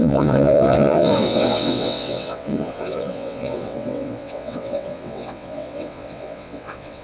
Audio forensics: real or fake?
fake